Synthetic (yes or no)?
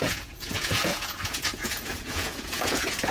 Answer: yes